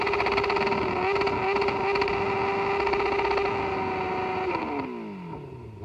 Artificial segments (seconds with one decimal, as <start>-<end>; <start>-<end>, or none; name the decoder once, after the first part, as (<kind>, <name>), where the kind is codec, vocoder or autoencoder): none